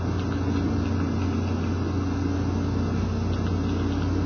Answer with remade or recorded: recorded